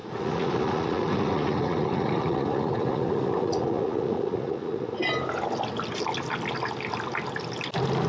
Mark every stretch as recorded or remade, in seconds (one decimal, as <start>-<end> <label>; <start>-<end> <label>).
0.0-4.9 remade; 4.9-8.1 recorded